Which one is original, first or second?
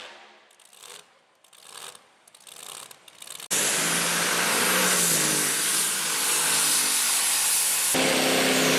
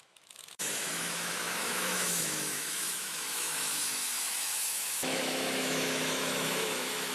first